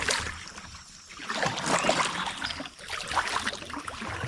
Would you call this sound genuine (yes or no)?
yes